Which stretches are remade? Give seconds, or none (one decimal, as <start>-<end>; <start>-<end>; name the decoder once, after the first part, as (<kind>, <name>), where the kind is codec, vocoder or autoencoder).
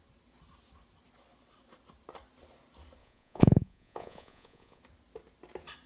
3.0-4.8 (vocoder, Vocos)